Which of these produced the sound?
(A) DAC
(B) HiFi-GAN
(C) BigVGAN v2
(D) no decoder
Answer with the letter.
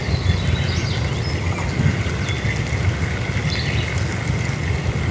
D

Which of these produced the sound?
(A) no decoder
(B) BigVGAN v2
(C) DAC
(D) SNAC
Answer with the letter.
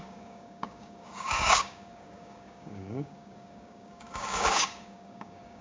C